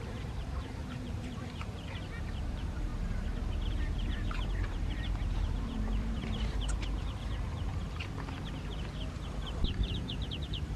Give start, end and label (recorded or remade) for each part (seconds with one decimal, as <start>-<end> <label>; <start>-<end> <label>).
0.0-2.9 remade; 2.9-3.7 recorded; 3.7-7.7 remade; 7.7-8.8 recorded; 8.8-10.8 remade